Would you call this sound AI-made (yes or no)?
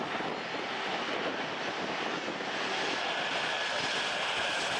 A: no